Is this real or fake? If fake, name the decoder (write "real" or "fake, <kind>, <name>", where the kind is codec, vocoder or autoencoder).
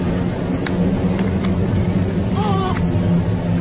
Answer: real